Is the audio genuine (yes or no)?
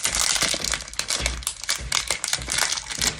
yes